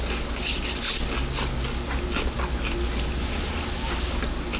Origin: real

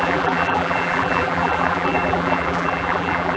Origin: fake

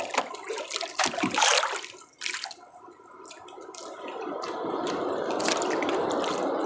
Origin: fake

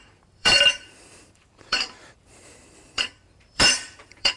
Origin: fake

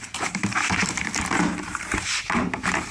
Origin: fake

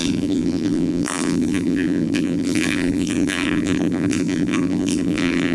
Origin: fake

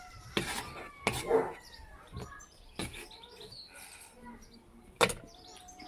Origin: real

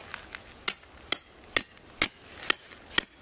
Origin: real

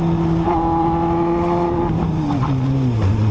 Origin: real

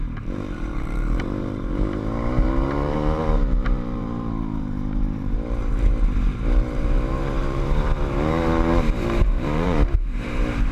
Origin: fake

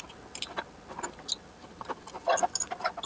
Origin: real